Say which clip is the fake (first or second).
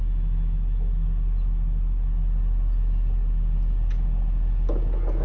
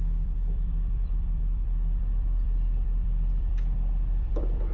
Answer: second